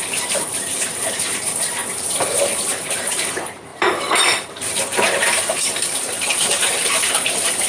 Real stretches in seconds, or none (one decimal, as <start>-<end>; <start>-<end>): none